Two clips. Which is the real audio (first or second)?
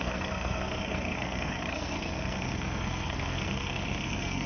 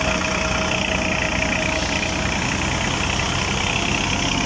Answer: second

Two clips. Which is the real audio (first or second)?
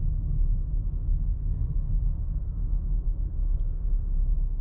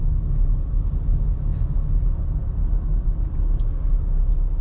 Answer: second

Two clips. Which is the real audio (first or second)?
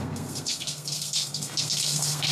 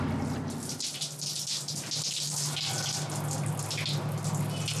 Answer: second